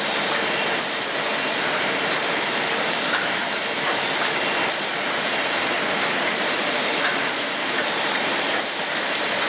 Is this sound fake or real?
fake